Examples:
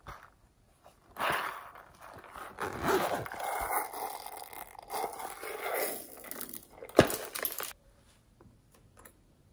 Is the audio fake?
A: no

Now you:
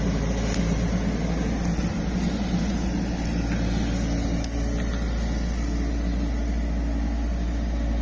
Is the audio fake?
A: no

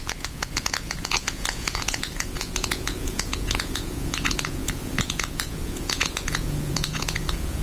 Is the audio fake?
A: yes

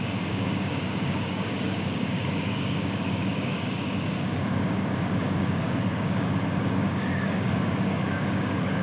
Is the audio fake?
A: yes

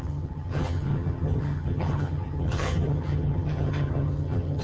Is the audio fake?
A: yes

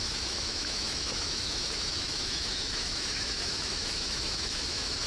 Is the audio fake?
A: yes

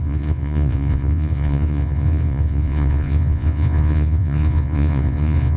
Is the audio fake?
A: yes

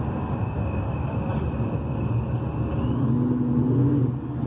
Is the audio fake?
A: no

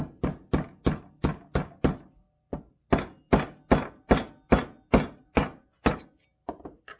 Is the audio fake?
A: no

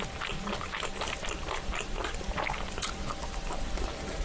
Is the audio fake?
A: no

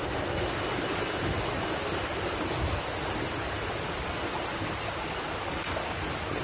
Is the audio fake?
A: no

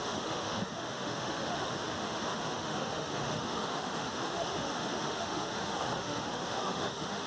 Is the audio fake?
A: yes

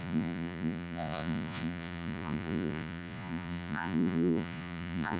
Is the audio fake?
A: yes